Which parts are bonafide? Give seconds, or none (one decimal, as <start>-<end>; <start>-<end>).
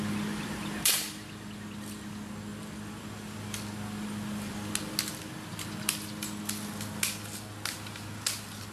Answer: 0.0-8.7